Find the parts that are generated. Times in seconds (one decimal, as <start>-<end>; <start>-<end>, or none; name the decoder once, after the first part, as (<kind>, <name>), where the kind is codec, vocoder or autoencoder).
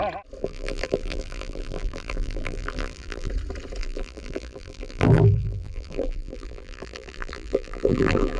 0.4-3.3 (vocoder, BigVGAN v2); 3.8-8.4